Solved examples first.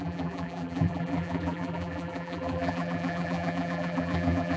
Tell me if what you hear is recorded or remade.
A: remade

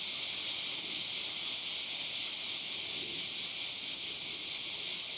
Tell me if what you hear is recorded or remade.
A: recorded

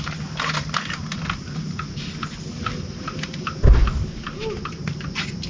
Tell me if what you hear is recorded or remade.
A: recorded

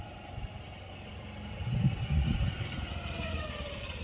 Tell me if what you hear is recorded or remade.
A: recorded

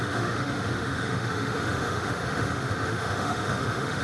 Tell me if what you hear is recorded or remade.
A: remade